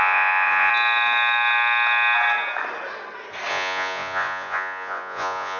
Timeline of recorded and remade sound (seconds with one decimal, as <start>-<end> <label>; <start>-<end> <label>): 0.0-0.7 remade; 0.7-3.5 recorded; 3.5-5.6 remade